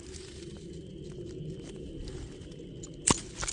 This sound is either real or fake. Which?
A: real